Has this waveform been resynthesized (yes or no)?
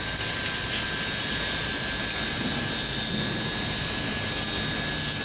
no